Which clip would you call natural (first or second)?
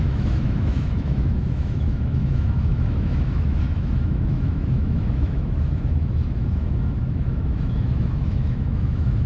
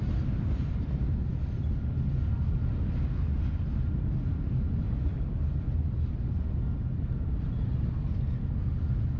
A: second